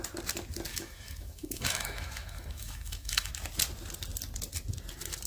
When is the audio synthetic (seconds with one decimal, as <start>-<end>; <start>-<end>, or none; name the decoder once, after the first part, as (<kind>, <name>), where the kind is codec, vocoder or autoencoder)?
0.7-3.3 (autoencoder, DAC-VAE)